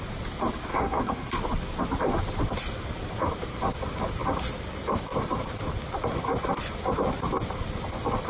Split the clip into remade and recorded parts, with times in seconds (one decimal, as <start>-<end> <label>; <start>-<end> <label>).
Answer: 0.0-0.7 recorded; 0.7-1.3 remade; 1.3-8.3 recorded